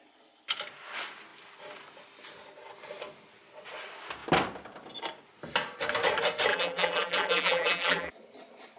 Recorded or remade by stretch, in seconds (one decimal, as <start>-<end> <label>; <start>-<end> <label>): 0.0-6.5 recorded; 6.5-8.1 remade; 8.1-8.8 recorded